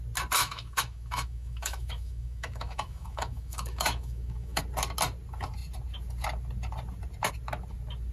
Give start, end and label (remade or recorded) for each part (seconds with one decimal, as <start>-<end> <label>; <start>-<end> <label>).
0.0-0.4 recorded; 0.4-4.6 remade; 4.6-8.1 recorded